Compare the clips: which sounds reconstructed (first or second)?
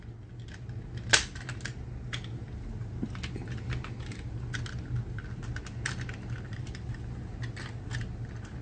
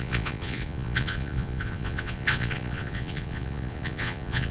second